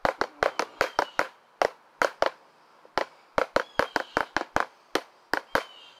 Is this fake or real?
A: real